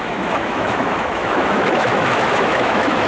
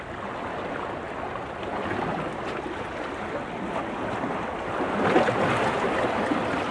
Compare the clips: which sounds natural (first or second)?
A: second